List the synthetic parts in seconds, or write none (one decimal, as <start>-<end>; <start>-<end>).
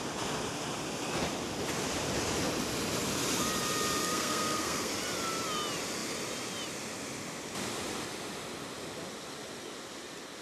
4.0-4.9